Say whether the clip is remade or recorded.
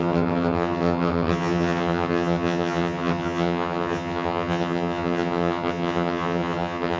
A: remade